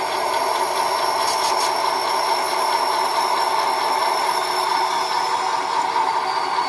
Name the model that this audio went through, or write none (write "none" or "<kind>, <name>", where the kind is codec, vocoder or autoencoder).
none